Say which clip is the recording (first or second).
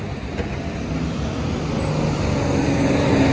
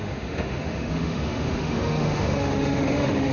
first